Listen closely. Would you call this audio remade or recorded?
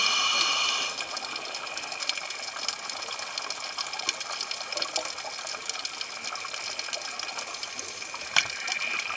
recorded